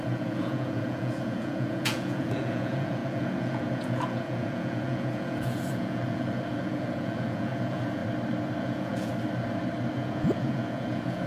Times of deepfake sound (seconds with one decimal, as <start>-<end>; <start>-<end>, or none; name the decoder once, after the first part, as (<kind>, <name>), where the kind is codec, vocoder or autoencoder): 0.0-8.0 (vocoder, Vocos); 8.6-9.1; 9.9-11.3